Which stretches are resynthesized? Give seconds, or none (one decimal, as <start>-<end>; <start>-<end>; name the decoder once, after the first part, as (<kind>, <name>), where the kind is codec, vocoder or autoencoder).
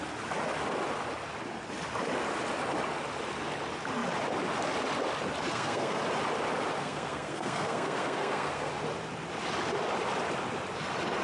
5.5-6.0 (codec, SNAC); 6.8-8.7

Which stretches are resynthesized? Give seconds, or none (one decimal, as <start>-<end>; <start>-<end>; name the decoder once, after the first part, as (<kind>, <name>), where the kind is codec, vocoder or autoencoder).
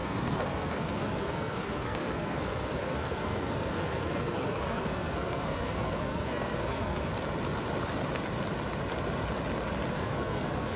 0.0-7.1 (codec, SNAC); 9.9-10.8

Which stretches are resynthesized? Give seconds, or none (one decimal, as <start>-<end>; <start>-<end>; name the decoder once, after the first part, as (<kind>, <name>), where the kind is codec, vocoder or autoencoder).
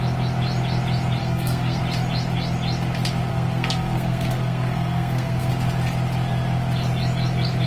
1.2-1.8 (codec, SNAC); 3.3-5.5